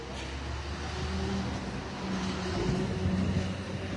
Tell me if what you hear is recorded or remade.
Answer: recorded